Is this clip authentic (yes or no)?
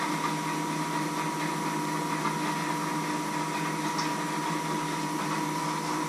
yes